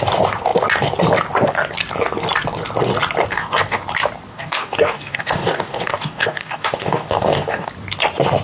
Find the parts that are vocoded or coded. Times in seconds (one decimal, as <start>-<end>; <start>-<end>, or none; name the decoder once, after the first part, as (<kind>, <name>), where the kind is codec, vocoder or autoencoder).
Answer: 3.3-3.8 (codec, DAC); 4.3-7.7